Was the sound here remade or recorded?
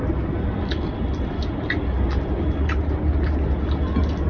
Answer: recorded